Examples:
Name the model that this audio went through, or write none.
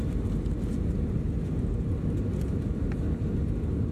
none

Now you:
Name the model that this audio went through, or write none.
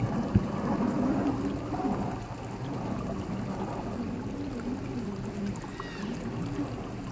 none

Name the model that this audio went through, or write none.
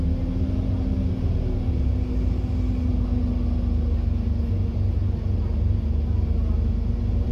none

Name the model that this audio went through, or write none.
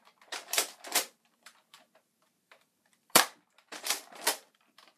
vocoder, BigVGAN v2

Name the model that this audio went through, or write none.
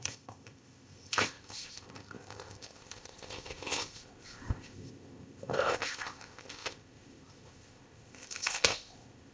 codec, ZipCodec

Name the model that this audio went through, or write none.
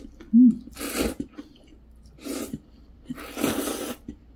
none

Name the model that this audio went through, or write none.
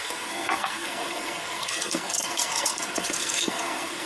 codec, SNAC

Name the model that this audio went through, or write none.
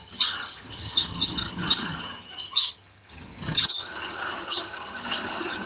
vocoder, HiFi-GAN